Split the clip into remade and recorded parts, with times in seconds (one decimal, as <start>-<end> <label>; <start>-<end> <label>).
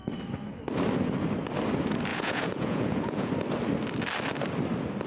0.0-2.1 recorded; 2.1-3.3 remade; 3.3-5.1 recorded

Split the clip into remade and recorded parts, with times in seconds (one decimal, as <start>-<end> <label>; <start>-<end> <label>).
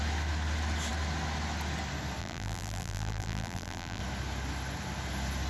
0.0-2.2 recorded; 2.2-4.0 remade; 4.0-5.5 recorded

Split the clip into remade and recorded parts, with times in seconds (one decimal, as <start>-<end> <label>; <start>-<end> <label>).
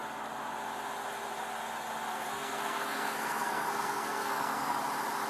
0.0-2.1 recorded; 2.1-4.8 remade; 4.8-5.3 recorded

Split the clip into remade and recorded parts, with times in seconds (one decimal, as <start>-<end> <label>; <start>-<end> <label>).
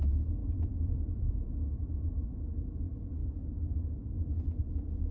0.0-3.2 recorded; 3.2-4.6 remade; 4.6-5.1 recorded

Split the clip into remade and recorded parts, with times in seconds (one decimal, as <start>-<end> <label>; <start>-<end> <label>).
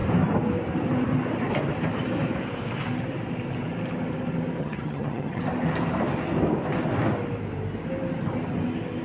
0.0-4.6 recorded; 4.6-5.4 remade; 5.4-9.0 recorded